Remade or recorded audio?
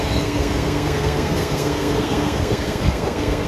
remade